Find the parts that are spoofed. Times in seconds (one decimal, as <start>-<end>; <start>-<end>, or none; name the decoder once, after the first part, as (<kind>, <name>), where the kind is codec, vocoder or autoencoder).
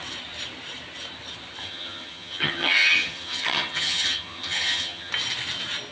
1.6-5.1 (vocoder, HiFi-GAN)